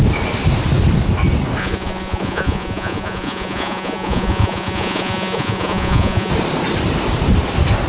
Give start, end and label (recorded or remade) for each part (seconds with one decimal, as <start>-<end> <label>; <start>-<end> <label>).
0.0-1.6 recorded; 1.6-6.3 remade; 6.3-7.9 recorded